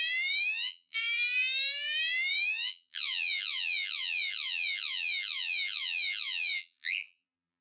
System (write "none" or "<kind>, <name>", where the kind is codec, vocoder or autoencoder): vocoder, BigVGAN v2